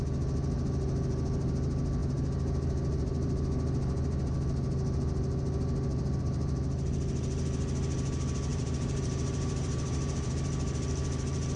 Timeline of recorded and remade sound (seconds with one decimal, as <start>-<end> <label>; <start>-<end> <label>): 0.0-8.5 recorded; 8.5-10.3 remade; 10.3-11.6 recorded